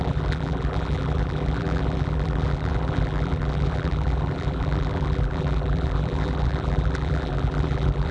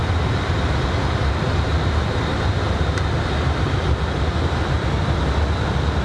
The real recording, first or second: second